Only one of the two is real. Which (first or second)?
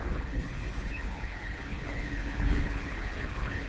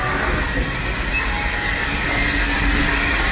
second